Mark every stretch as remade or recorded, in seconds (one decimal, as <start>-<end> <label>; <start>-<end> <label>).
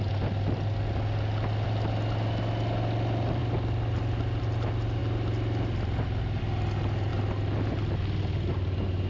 0.0-9.1 recorded